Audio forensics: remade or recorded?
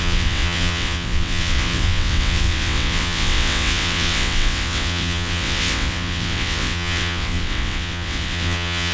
remade